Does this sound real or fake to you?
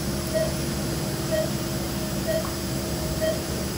fake